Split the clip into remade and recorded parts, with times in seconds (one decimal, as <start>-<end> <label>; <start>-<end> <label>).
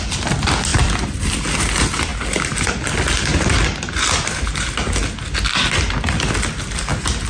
0.0-0.7 recorded; 0.7-1.3 remade; 1.3-7.3 recorded